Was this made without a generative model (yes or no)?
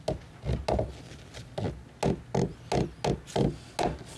yes